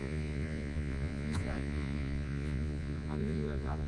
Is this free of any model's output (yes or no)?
no